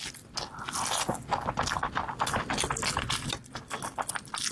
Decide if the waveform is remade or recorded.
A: recorded